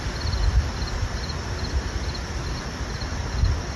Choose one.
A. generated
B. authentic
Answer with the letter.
B